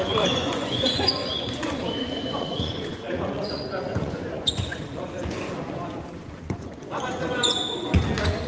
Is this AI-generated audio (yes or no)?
yes